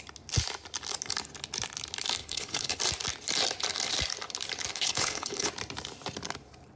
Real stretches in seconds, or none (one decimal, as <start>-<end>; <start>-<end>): 0.0-2.2; 2.8-4.7; 5.5-6.8